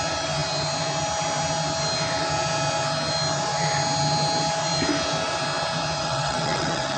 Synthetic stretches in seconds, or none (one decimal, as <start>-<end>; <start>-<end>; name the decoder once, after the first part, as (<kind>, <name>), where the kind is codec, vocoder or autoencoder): 6.0-7.0 (vocoder, WaveNeXt)